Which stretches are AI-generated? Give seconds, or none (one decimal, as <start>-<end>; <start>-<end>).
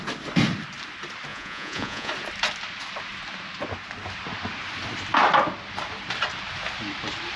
1.3-2.1